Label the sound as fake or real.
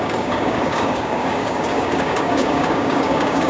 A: fake